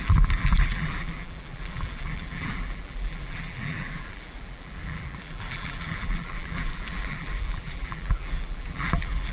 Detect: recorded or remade remade